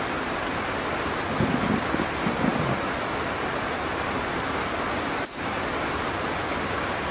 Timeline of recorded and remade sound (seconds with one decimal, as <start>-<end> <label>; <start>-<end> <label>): 0.0-7.1 recorded